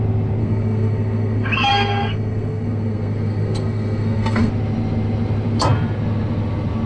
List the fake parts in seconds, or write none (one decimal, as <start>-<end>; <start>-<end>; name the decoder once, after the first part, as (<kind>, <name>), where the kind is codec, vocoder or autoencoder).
0.4-4.5 (codec, SNAC)